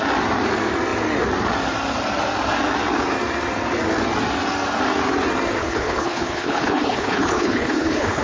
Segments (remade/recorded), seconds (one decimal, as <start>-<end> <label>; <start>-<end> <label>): 0.0-5.6 recorded; 5.6-8.2 remade